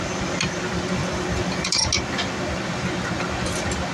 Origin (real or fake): real